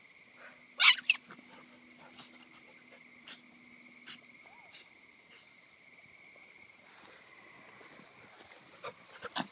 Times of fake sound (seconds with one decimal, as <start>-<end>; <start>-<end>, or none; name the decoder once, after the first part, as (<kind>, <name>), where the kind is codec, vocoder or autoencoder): none